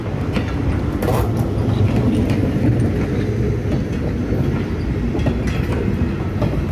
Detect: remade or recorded recorded